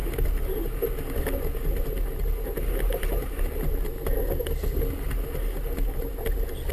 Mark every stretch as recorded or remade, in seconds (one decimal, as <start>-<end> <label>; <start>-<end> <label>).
0.0-6.7 recorded